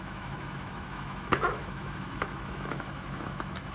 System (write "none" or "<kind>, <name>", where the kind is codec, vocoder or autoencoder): autoencoder, DAC-VAE